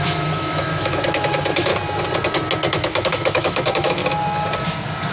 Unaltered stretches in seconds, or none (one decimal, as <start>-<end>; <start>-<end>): 1.7-2.7; 4.0-5.1